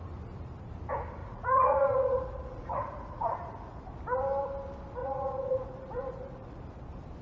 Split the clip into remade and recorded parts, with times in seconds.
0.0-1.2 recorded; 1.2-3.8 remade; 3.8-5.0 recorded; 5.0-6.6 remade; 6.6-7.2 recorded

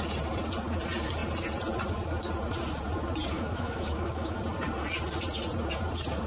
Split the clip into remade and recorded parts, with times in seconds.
0.0-3.3 recorded; 3.3-4.4 remade; 4.4-6.3 recorded

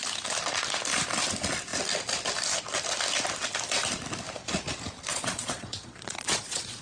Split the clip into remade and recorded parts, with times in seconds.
0.0-5.1 recorded; 5.1-6.8 remade

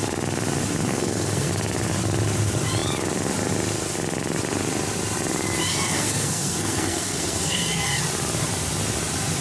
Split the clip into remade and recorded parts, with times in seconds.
0.0-0.9 recorded; 0.9-1.5 remade; 1.5-5.7 recorded; 5.7-8.0 remade; 8.0-9.4 recorded